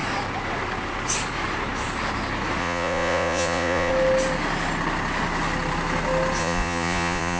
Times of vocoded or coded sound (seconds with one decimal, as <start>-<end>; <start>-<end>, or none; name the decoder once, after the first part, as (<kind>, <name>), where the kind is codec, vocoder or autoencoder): 2.6-3.9 (vocoder, Vocos); 6.4-7.4